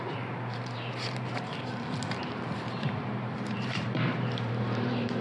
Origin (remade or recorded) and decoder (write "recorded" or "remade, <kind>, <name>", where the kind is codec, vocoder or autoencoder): remade, vocoder, BigVGAN v2